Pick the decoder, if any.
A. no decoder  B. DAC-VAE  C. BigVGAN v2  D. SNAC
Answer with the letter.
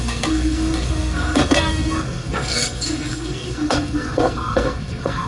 D